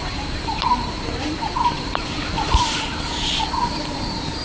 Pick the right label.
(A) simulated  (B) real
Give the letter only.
A